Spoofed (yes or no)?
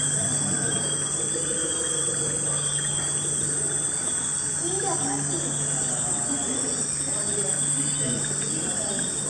no